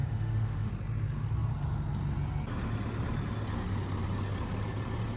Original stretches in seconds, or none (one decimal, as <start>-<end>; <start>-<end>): 0.7-5.2